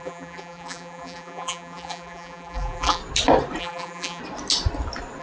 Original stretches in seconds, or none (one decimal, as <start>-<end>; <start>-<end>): 3.0-3.6; 4.2-5.2